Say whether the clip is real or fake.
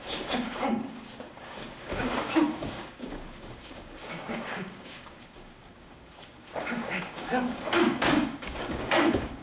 fake